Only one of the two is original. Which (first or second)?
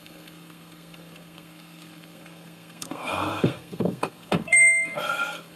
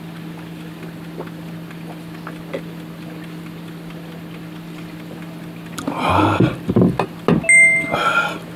second